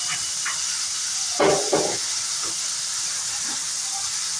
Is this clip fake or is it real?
real